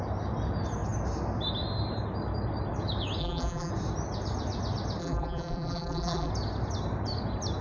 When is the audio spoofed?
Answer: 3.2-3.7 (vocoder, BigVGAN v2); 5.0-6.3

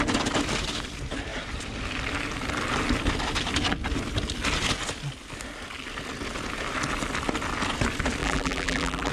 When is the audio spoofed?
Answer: 8.2-9.1 (vocoder, BigVGAN v2)

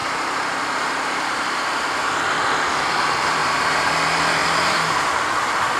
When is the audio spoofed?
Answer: 0.0-1.8 (vocoder, BigVGAN v2); 3.4-3.9; 4.4-5.2

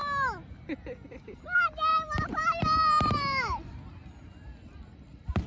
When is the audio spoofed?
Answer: 0.0-1.4 (vocoder, BigVGAN v2); 1.9-5.5

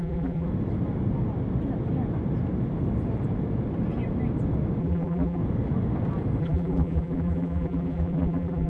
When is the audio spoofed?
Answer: 0.0-0.5 (vocoder, BigVGAN v2); 4.8-5.4; 6.4-8.7

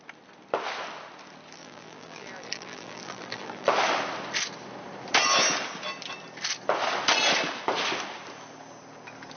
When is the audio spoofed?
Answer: 1.6-3.7 (vocoder, BigVGAN v2)